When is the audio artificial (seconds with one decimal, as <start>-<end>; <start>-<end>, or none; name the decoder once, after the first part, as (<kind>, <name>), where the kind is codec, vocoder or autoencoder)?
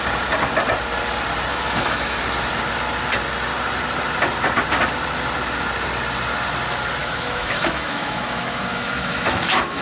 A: 1.5-2.2 (autoencoder, DAC-VAE); 7.0-9.8